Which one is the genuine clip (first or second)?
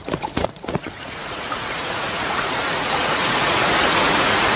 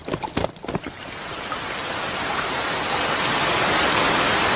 second